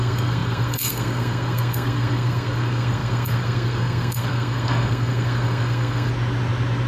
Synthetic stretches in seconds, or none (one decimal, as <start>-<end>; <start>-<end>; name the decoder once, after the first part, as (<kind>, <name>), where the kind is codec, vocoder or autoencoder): 0.0-6.1 (codec, SNAC)